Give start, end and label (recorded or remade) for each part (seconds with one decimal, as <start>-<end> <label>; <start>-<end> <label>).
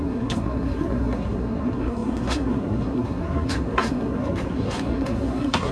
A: 0.0-5.7 remade